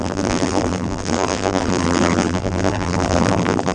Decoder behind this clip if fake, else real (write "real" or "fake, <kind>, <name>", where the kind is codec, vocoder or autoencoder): fake, vocoder, BigVGAN v2